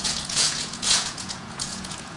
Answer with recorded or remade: remade